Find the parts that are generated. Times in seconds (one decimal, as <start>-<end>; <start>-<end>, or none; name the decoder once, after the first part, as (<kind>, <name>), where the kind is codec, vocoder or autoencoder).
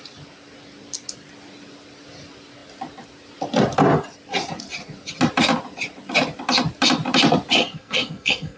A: 7.6-8.6 (codec, SNAC)